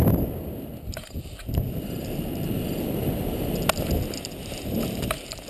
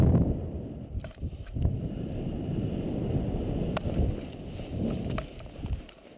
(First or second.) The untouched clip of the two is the first